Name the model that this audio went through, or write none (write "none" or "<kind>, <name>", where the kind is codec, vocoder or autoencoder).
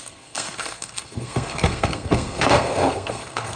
codec, SNAC